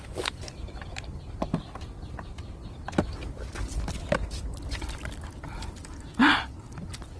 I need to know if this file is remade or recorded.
recorded